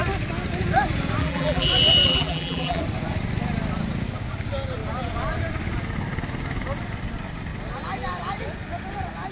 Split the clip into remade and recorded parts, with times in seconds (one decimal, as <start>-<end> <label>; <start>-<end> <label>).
0.0-1.2 recorded; 1.2-1.7 remade; 1.7-2.1 recorded; 2.1-2.8 remade; 2.8-9.3 recorded